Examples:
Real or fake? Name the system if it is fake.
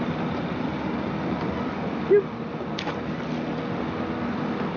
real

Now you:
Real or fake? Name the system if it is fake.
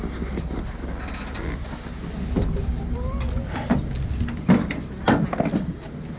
real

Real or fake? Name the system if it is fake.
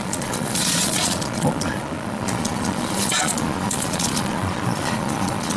fake, vocoder, Vocos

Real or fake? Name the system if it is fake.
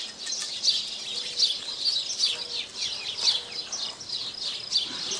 real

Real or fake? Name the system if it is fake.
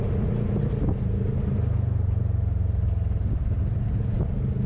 real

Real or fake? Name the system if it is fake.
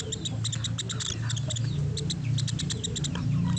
real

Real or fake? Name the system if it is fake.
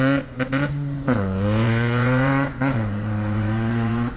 fake, vocoder, Vocos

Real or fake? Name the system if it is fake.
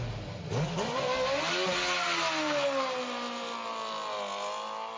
real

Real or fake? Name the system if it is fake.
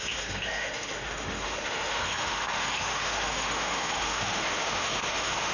fake, autoencoder, DAC-VAE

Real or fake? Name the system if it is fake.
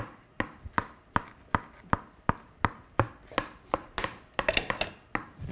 real